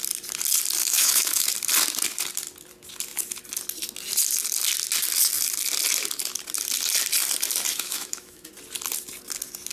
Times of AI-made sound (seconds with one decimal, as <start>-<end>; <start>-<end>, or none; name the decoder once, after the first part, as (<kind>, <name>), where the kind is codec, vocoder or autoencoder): 0.8-1.5 (autoencoder, DAC-VAE); 7.7-8.5